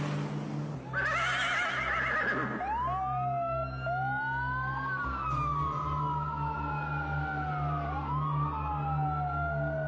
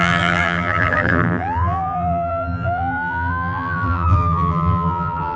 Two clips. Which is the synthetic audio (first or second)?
second